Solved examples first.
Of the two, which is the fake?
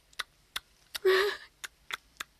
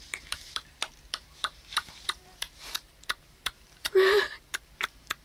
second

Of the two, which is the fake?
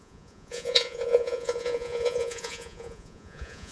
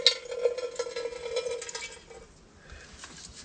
first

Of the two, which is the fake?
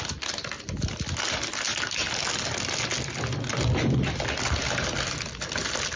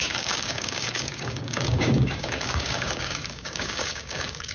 second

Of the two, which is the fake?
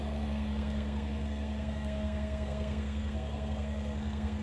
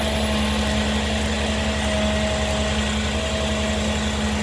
first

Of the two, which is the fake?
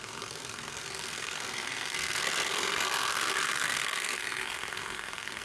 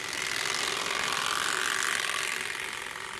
first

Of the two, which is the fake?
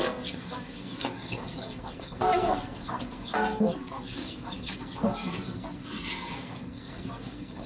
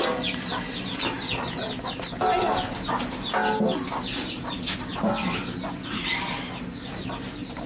first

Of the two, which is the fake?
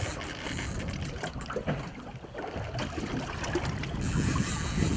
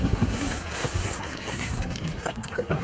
second